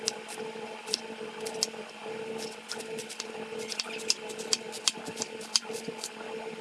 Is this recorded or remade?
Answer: recorded